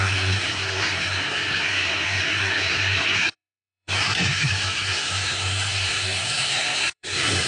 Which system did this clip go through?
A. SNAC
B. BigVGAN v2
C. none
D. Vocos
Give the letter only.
A